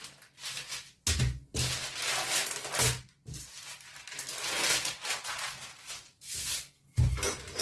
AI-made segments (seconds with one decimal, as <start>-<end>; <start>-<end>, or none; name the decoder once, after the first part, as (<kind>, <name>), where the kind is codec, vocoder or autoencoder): none